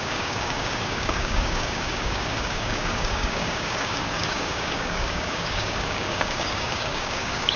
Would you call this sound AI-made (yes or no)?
yes